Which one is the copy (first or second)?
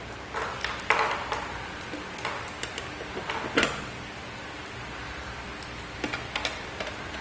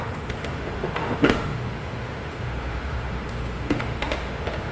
second